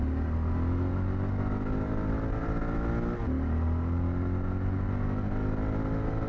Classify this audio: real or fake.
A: real